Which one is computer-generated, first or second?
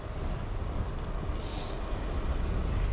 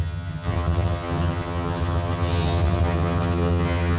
second